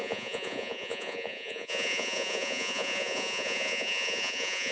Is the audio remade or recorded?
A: remade